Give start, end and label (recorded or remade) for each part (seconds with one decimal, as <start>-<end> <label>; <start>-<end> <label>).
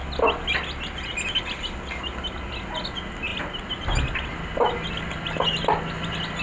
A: 0.0-6.4 recorded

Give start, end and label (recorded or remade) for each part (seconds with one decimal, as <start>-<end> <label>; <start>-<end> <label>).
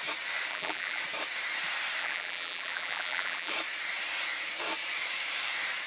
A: 0.0-0.5 recorded; 0.5-1.0 remade; 1.0-2.0 recorded; 2.0-3.5 remade; 3.5-5.9 recorded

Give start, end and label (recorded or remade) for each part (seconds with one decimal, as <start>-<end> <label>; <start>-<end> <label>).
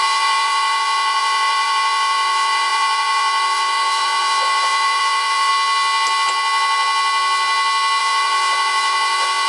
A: 0.0-5.5 remade; 5.5-8.0 recorded; 8.0-9.5 remade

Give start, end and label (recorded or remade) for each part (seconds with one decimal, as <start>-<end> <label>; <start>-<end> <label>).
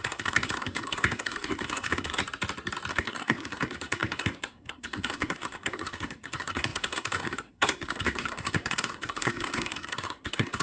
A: 0.0-2.2 remade; 2.2-2.9 recorded; 2.9-10.6 remade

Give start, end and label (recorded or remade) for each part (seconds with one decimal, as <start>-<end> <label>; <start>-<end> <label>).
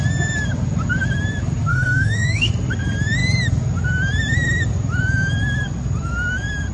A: 0.0-1.7 recorded; 1.7-2.5 remade; 2.5-6.7 recorded